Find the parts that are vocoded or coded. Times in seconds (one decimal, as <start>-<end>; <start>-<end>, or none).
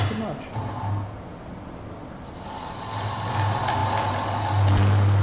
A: none